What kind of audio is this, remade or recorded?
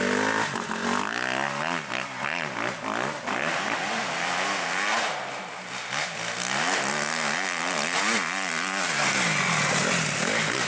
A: recorded